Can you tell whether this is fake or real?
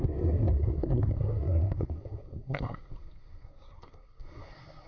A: fake